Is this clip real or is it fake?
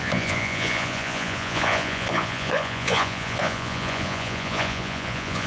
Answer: fake